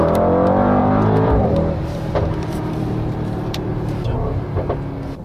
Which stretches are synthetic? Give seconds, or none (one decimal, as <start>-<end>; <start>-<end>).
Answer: 0.8-3.9